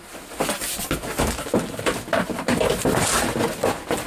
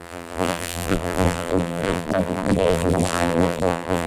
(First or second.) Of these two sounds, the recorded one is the first